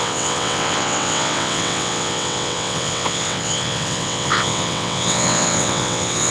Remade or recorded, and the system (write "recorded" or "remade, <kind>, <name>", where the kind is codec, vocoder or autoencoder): remade, vocoder, WaveNeXt